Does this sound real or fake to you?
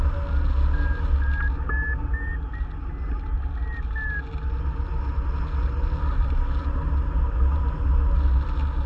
real